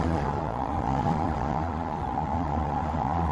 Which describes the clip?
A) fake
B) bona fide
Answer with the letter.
A